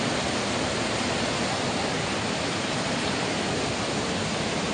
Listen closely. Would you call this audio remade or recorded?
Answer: recorded